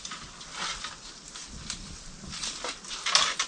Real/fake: real